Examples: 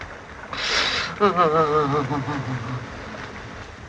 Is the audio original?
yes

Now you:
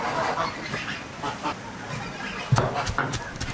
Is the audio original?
yes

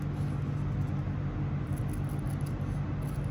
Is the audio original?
yes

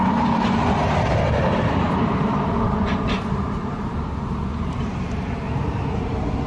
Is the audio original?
no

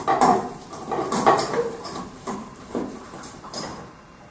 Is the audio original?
no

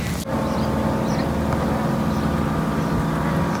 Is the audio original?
yes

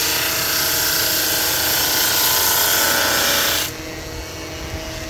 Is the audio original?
yes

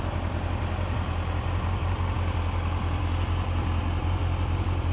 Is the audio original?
yes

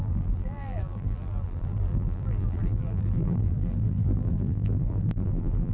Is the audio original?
no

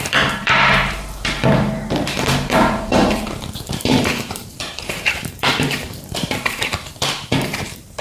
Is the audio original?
no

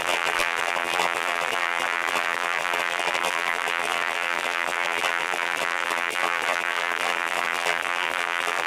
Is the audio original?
no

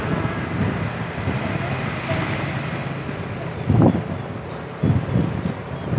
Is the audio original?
yes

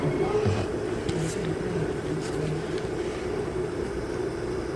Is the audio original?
no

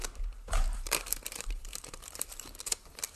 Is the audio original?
no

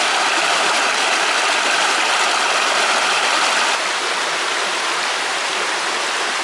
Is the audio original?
no